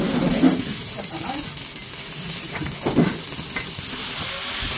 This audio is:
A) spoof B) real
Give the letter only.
B